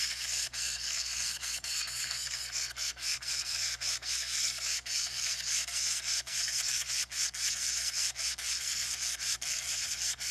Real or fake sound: fake